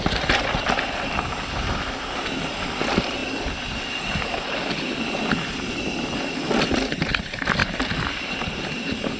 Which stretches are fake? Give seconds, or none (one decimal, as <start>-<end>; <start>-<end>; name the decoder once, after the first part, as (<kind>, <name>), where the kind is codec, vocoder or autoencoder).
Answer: 7.6-8.3 (vocoder, BigVGAN v2)